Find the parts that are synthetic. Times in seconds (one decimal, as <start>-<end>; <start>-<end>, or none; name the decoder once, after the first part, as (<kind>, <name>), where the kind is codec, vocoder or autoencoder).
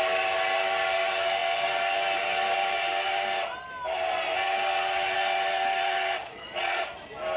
6.2-6.8 (vocoder, Vocos)